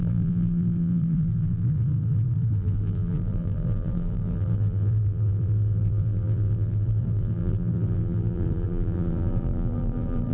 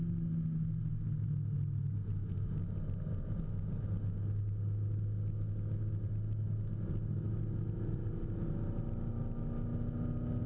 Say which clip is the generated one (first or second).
first